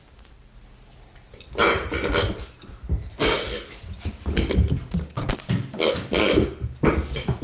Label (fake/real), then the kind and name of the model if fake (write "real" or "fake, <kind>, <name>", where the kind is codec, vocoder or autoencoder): real